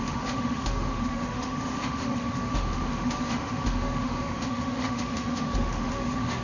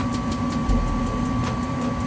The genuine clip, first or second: second